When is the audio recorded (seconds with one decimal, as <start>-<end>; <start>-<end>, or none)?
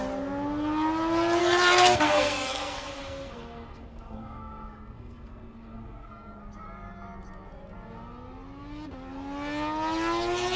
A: 0.0-1.4; 6.4-10.6